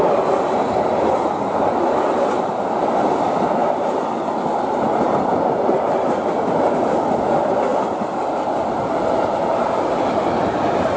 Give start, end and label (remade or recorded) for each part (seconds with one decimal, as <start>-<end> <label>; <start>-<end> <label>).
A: 0.0-3.6 recorded; 3.6-5.4 remade; 5.4-7.7 recorded; 7.7-8.3 remade; 8.3-11.0 recorded